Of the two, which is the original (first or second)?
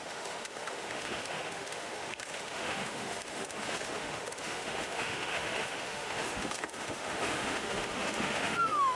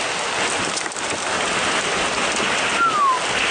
second